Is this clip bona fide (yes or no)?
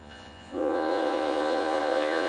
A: no